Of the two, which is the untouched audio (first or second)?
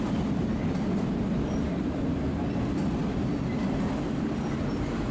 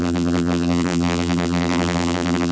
first